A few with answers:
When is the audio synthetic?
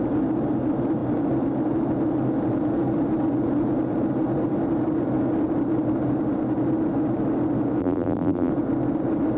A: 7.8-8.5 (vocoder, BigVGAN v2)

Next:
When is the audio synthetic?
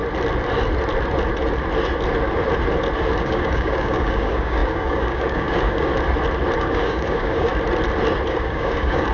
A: 3.2-5.9 (codec, DAC); 6.6-7.5; 8.3-9.1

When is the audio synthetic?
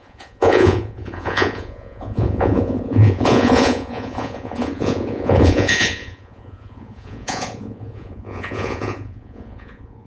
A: 0.0-10.1 (vocoder, Vocos)